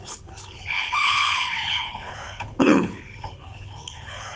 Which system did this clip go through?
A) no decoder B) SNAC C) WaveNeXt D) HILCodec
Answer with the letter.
D